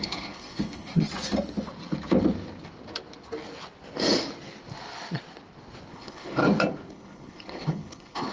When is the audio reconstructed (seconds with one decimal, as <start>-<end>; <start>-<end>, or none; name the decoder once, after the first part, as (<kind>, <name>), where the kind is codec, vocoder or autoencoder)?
0.0-0.9 (codec, HILCodec); 5.9-6.4; 6.9-8.3